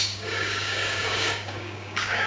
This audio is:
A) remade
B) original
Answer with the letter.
A